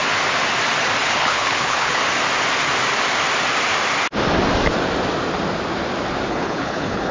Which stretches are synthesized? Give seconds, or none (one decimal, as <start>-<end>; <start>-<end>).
1.0-2.0; 6.3-7.1